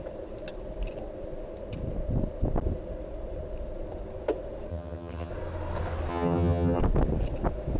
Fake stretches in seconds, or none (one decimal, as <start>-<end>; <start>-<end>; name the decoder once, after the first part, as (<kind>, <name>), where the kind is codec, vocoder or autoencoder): 4.7-5.3 (vocoder, HiFi-GAN); 6.1-6.8